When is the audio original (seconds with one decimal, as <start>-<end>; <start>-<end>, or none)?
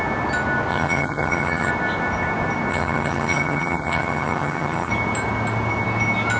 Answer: 0.0-0.7; 1.7-2.7; 4.9-6.4